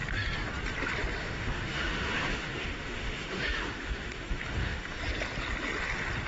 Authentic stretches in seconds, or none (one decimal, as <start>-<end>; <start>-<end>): 0.0-1.2; 5.0-6.3